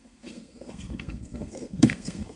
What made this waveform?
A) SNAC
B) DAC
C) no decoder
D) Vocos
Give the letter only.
A